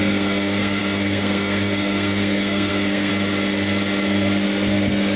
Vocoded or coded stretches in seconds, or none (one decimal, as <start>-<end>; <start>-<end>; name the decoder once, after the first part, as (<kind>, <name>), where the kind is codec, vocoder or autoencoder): 0.0-3.1 (codec, SNAC)